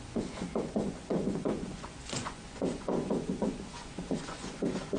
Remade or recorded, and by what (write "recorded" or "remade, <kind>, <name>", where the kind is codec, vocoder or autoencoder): remade, vocoder, Vocos